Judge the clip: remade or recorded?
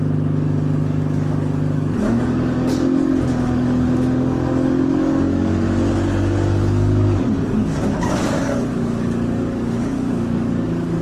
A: remade